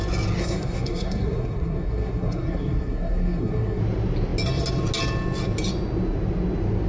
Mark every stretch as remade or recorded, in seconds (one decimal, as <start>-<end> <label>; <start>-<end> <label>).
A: 0.0-0.4 recorded; 0.4-3.8 remade; 3.8-6.9 recorded